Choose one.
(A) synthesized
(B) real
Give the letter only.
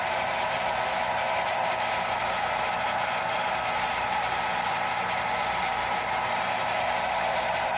A